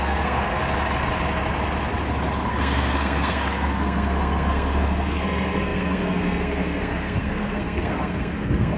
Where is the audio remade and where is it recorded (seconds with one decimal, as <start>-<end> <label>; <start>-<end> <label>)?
0.0-0.6 remade; 0.6-2.5 recorded; 2.5-8.8 remade